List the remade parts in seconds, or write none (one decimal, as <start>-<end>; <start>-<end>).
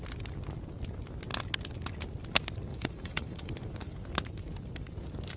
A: 2.7-3.5